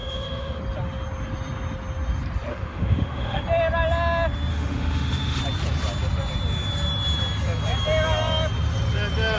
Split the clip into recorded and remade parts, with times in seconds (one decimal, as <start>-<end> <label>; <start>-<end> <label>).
0.0-0.6 remade; 0.6-2.5 recorded; 2.5-3.4 remade; 3.4-4.5 recorded; 4.5-5.4 remade; 5.4-9.4 recorded